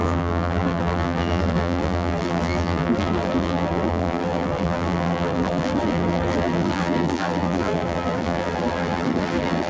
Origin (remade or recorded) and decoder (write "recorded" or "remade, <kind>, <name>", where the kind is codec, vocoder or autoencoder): remade, vocoder, BigVGAN v2